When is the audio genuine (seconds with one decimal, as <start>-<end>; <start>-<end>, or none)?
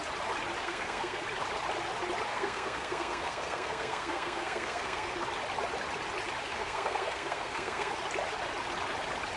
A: 0.0-0.6; 1.2-2.3; 5.1-6.5; 7.9-9.4